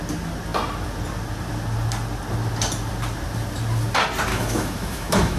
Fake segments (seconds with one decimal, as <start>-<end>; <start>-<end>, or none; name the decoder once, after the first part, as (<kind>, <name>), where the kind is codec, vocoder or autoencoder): 4.3-5.4 (autoencoder, DAC-VAE)